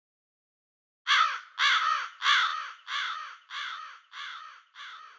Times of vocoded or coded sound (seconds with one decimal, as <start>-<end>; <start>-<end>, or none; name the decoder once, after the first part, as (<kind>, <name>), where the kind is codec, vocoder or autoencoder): 2.5-4.8 (vocoder, BigVGAN v2)